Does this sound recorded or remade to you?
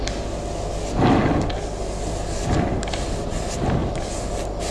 recorded